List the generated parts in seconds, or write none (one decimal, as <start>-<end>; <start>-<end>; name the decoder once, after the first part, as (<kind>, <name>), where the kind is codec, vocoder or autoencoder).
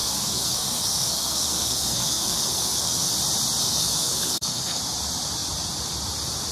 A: 0.0-3.1 (codec, SNAC); 3.6-4.8